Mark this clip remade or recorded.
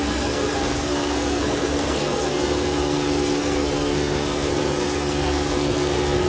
remade